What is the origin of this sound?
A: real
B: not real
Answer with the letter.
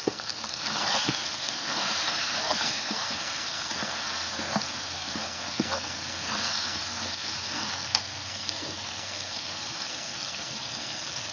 B